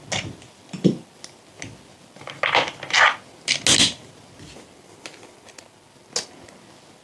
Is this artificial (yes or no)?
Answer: no